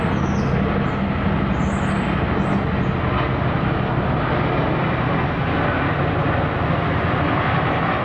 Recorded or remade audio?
recorded